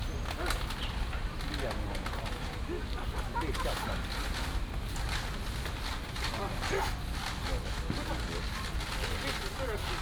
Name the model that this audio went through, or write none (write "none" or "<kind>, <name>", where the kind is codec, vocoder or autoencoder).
none